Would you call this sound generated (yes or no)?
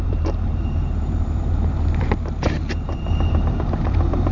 yes